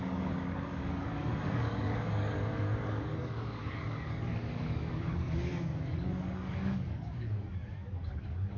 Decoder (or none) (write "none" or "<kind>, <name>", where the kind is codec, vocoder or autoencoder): codec, DAC